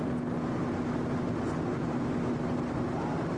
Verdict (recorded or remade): recorded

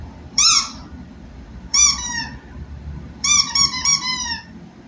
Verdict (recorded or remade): remade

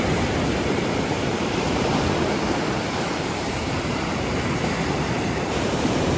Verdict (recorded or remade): remade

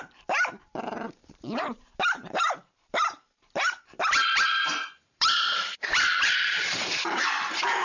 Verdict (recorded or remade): remade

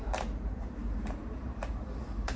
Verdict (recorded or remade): remade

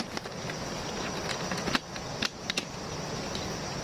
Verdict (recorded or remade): recorded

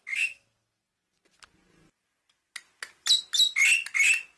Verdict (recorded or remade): recorded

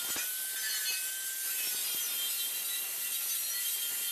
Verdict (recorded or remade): recorded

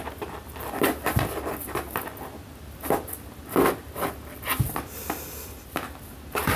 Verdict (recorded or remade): recorded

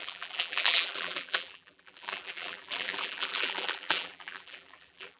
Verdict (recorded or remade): remade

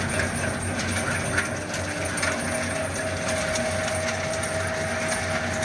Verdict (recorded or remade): recorded